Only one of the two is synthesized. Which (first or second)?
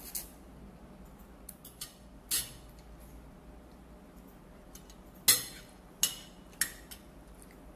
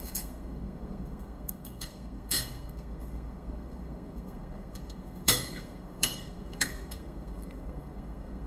second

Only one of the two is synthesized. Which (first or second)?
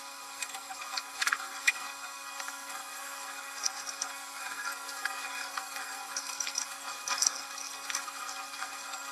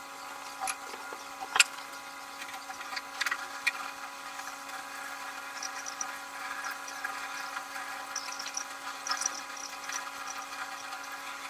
first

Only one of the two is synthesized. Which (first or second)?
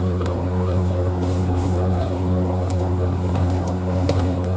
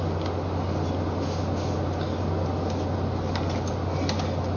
first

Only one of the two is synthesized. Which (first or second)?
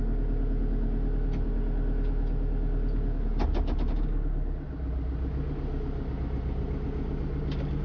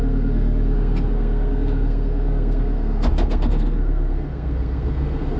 second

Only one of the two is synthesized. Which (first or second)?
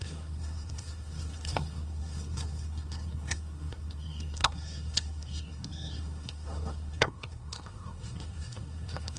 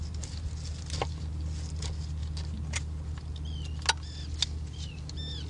first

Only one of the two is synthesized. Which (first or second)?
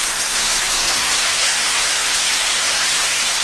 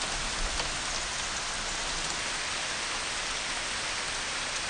first